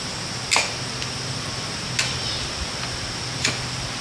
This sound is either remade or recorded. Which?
recorded